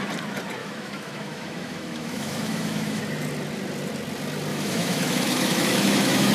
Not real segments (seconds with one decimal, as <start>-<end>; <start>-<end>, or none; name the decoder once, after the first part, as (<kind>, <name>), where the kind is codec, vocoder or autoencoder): 0.6-3.0 (autoencoder, DAC-VAE); 4.5-6.3